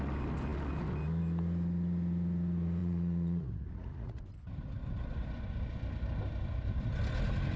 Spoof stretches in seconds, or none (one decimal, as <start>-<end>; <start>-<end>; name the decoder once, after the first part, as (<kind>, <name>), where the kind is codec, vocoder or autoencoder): 2.8-4.2 (vocoder, Vocos)